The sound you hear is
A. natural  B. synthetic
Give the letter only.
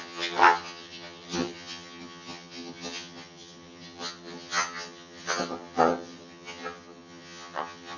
B